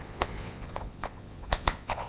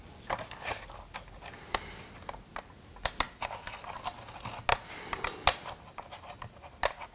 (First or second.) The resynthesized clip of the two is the first